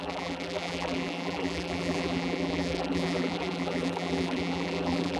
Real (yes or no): no